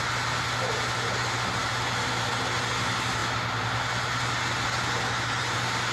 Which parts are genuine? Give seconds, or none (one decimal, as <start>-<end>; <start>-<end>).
0.0-5.9